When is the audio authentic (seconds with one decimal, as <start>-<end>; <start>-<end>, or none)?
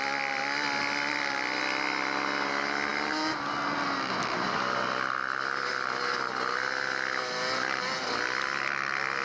0.0-9.2